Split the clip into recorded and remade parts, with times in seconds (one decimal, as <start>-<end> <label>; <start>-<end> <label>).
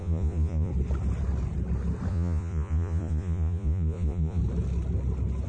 0.0-0.7 remade; 0.7-2.1 recorded; 2.1-4.4 remade; 4.4-5.5 recorded